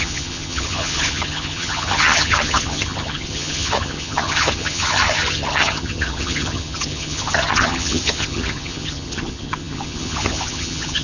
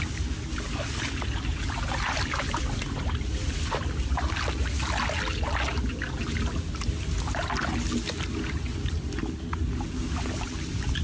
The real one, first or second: second